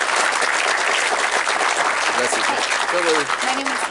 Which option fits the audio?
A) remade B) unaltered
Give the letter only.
B